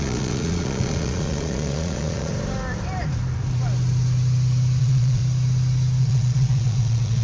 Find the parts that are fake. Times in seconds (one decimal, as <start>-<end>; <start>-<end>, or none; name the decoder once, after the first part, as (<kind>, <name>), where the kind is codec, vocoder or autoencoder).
0.0-2.3 (vocoder, Vocos); 4.8-5.2; 6.0-7.2